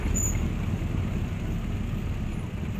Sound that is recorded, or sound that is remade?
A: recorded